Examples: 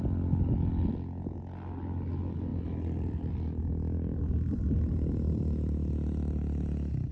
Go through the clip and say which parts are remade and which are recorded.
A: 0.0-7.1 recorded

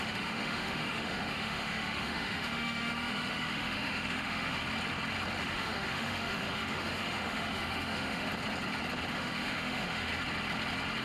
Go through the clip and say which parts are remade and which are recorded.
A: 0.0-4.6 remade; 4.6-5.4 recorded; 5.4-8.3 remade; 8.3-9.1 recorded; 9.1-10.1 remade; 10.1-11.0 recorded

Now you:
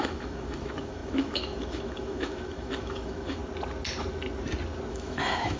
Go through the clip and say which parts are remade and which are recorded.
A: 0.0-3.4 remade; 3.4-4.9 recorded; 4.9-5.6 remade